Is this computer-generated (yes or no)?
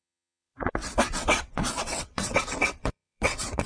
yes